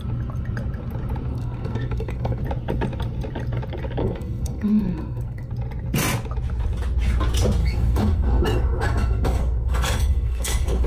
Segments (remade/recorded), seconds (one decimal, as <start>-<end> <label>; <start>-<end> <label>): 0.0-1.3 recorded; 1.3-2.4 remade; 2.4-4.0 recorded; 4.0-5.5 remade; 5.5-7.6 recorded; 7.6-10.9 remade